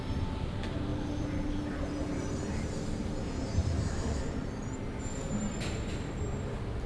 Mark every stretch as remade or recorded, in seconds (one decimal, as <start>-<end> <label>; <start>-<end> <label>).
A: 0.0-0.9 recorded; 0.9-3.2 remade; 3.2-3.6 recorded; 3.6-4.7 remade; 4.7-6.9 recorded